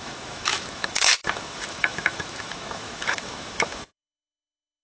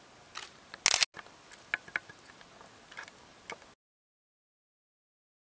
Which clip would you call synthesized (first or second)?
first